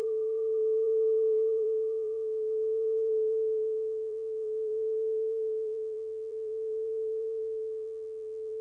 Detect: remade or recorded remade